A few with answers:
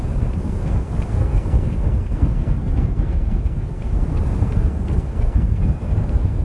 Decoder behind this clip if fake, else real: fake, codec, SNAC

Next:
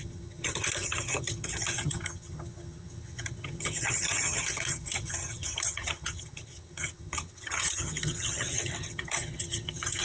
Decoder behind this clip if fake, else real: fake, vocoder, HiFi-GAN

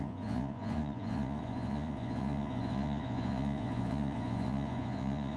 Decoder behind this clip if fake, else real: fake, vocoder, Vocos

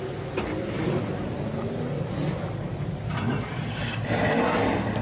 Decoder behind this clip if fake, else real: real